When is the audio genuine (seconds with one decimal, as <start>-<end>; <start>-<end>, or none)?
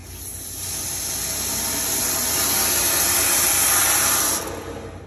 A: 0.0-5.1